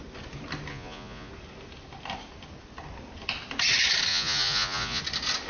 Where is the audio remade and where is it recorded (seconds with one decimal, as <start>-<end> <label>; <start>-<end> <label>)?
0.0-0.7 recorded; 0.7-1.3 remade; 1.3-4.1 recorded; 4.1-5.0 remade; 5.0-5.5 recorded